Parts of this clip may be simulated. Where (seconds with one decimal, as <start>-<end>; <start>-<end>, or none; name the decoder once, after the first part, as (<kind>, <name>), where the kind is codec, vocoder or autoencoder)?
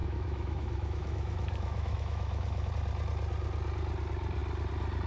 0.0-2.7 (autoencoder, DAC-VAE)